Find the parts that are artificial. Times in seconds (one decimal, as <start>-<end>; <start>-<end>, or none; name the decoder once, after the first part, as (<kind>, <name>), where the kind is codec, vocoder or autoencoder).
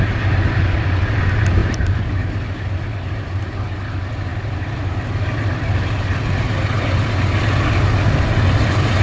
none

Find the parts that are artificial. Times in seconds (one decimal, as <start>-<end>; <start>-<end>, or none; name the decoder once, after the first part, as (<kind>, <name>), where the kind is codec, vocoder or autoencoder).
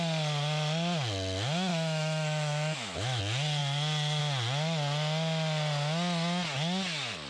1.7-3.2 (autoencoder, DAC-VAE)